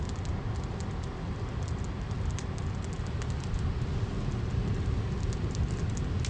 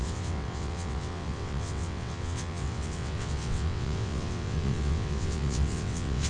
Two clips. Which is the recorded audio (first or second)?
first